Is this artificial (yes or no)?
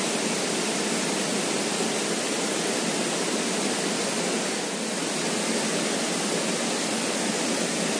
no